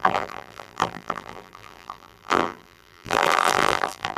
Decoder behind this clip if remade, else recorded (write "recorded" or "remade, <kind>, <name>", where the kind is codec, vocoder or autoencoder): remade, vocoder, BigVGAN v2